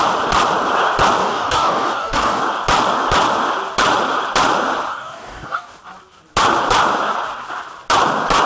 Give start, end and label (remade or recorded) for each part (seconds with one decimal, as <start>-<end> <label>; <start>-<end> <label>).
0.0-1.2 recorded; 1.2-2.4 remade; 2.4-4.9 recorded; 4.9-5.7 remade; 5.7-8.5 recorded